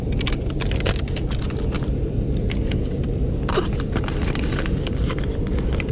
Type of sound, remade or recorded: recorded